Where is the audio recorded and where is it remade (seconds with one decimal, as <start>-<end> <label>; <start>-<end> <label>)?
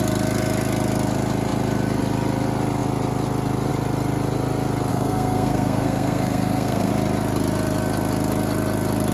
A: 0.0-4.9 recorded; 4.9-6.9 remade; 6.9-9.1 recorded